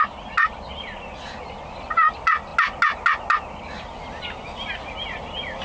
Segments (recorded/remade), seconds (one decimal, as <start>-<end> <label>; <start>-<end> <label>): 0.0-5.6 recorded